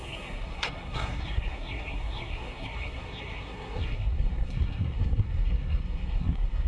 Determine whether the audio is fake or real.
fake